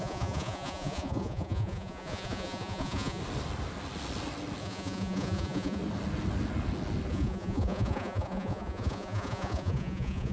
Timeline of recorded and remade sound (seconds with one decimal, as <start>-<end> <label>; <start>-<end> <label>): 0.0-3.2 remade; 3.2-4.6 recorded; 4.6-5.8 remade; 5.8-7.1 recorded; 7.1-10.3 remade